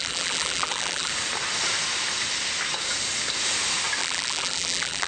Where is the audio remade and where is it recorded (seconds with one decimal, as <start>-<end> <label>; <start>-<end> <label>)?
0.0-1.1 remade; 1.1-4.0 recorded; 4.0-5.1 remade